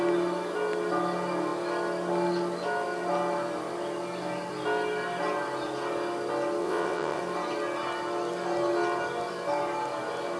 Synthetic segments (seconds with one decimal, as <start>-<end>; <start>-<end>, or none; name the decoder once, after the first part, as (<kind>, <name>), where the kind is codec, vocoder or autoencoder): 6.6-7.2 (vocoder, WaveNeXt)

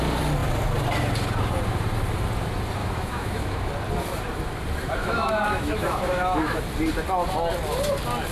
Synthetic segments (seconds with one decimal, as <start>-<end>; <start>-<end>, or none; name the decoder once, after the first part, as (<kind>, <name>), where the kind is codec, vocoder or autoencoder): 2.8-3.7 (autoencoder, DAC-VAE); 5.0-6.6

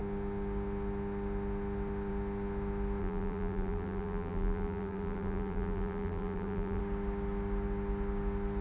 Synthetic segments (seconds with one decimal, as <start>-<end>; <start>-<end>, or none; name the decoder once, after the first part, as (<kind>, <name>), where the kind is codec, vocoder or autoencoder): 3.0-6.8 (vocoder, BigVGAN v2)

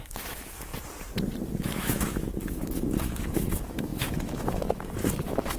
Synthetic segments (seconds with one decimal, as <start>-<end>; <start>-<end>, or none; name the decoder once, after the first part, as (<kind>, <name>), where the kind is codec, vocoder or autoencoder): 0.0-0.7 (autoencoder, DAC-VAE); 1.5-5.6

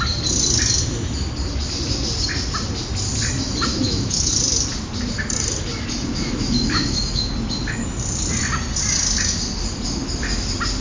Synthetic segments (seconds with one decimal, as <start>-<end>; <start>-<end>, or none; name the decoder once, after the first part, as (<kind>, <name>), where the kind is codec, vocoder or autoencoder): 3.7-4.3 (autoencoder, DAC-VAE); 6.1-7.3

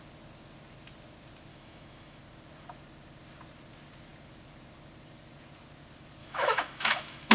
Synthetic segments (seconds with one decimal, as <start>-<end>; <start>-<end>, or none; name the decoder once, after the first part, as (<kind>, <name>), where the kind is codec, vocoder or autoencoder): 1.5-2.2 (autoencoder, DAC-VAE); 6.2-7.3

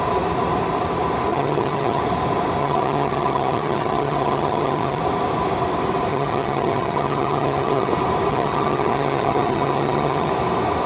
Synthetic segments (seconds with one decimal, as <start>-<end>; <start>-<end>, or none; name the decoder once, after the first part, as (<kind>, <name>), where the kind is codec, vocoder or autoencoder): 1.3-2.0 (vocoder, HiFi-GAN); 2.6-5.0; 6.1-7.9; 8.3-10.3

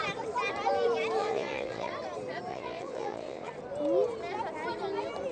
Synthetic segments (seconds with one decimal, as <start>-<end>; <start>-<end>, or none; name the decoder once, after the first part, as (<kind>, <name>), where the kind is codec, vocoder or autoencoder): 1.2-1.9 (vocoder, Vocos); 2.5-3.5